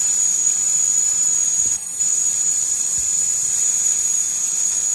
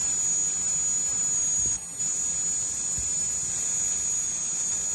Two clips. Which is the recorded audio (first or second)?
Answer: second